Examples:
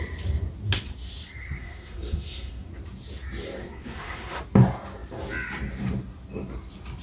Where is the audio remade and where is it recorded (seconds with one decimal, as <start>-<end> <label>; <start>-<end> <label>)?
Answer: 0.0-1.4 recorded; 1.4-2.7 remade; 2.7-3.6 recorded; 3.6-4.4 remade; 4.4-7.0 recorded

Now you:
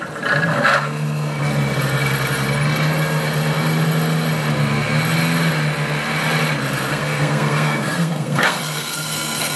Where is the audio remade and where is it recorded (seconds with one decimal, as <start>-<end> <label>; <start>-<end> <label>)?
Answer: 0.0-0.5 recorded; 0.5-1.4 remade; 1.4-6.9 recorded; 6.9-9.6 remade

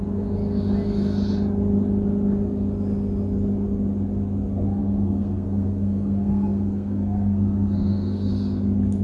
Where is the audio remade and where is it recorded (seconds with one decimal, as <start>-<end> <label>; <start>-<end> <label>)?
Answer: 0.0-4.8 recorded; 4.8-8.3 remade; 8.3-9.0 recorded

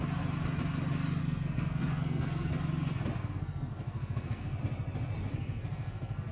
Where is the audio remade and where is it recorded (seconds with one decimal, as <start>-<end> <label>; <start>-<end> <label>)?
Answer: 0.0-1.2 recorded; 1.2-2.5 remade; 2.5-3.2 recorded; 3.2-4.6 remade; 4.6-5.3 recorded; 5.3-6.3 remade

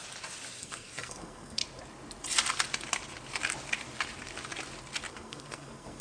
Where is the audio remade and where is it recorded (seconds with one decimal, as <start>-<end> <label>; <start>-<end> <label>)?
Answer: 0.0-0.6 recorded; 0.6-1.6 remade; 1.6-5.1 recorded; 5.1-6.0 remade